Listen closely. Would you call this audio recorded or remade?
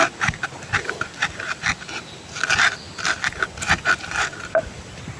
recorded